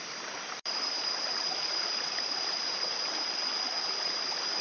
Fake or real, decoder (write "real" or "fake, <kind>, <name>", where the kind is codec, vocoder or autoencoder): fake, vocoder, BigVGAN v2